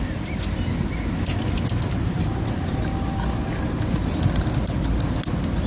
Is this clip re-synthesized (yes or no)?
no